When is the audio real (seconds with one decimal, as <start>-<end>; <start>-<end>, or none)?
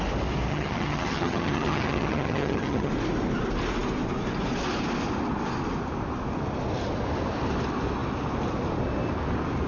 0.0-0.5; 2.9-9.7